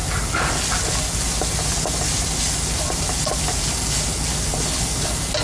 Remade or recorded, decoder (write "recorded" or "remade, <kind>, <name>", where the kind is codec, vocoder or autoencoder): recorded